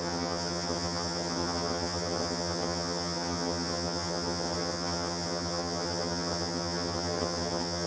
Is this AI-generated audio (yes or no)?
yes